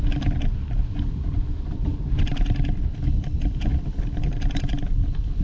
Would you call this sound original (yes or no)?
yes